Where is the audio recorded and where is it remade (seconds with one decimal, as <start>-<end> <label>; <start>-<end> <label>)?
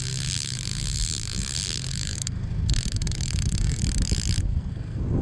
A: 0.0-3.8 remade; 3.8-4.4 recorded; 4.4-5.2 remade